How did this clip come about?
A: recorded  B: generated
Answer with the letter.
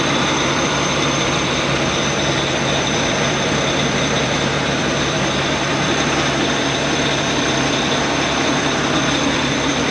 B